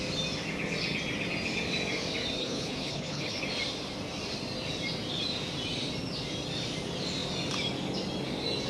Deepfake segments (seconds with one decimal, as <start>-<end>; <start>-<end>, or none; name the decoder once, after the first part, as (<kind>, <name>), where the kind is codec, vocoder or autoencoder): 2.4-3.4 (codec, HILCodec)